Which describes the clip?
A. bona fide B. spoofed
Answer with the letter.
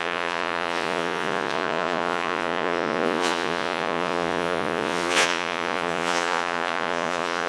B